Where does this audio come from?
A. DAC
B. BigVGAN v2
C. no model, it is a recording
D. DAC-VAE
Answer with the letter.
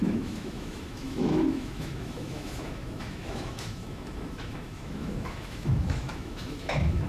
D